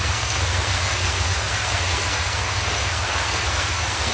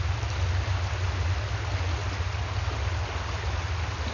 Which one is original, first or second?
second